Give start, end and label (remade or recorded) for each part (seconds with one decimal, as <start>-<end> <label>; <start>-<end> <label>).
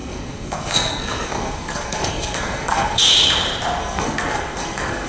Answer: 0.0-3.1 remade; 3.1-3.8 recorded; 3.8-5.1 remade